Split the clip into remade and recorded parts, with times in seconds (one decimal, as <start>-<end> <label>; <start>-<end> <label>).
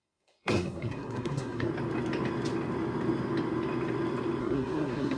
0.0-1.7 remade; 1.7-4.4 recorded; 4.4-5.2 remade